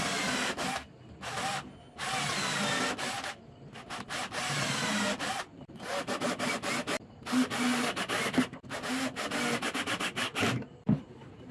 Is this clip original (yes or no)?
yes